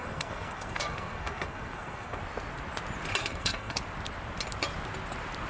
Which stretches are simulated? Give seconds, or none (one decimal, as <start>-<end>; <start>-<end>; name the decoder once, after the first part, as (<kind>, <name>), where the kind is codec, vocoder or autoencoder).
0.0-2.2 (codec, SNAC); 3.2-3.8